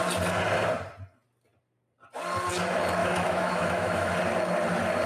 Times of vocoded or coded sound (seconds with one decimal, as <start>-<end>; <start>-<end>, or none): 3.0-4.1